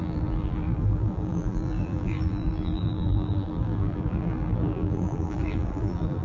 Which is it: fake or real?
fake